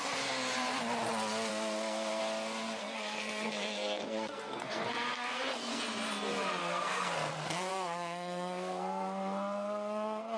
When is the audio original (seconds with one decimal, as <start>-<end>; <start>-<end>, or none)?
0.0-1.5; 2.2-2.8; 5.8-6.6; 7.3-7.7